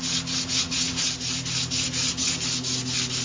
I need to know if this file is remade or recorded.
recorded